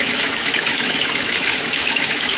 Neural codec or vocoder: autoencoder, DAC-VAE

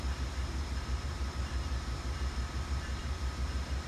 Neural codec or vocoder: vocoder, BigVGAN v2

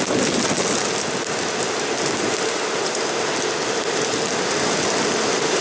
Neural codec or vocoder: none